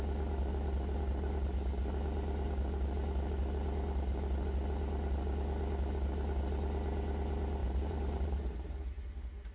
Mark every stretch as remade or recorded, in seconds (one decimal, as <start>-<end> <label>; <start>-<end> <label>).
0.0-7.6 recorded; 7.6-8.5 remade; 8.5-9.5 recorded